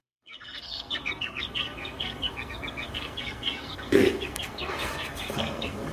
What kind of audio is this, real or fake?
fake